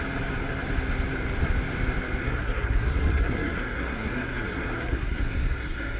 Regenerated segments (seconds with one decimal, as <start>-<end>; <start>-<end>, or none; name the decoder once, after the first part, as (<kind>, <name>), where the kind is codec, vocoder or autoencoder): 2.2-6.0 (codec, SNAC)